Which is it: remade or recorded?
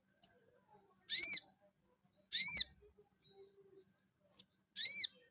recorded